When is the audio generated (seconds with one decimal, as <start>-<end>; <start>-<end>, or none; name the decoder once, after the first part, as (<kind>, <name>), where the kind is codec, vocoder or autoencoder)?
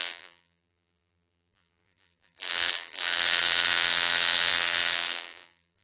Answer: 0.0-5.8 (vocoder, BigVGAN v2)